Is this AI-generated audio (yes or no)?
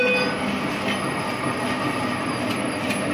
no